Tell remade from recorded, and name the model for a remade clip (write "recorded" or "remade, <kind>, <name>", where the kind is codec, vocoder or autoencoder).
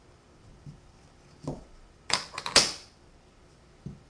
remade, vocoder, BigVGAN v2